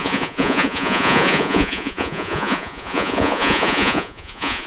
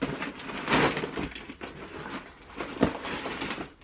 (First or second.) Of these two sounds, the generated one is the first